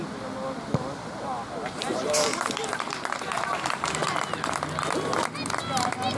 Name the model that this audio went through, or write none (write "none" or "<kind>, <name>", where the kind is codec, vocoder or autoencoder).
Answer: none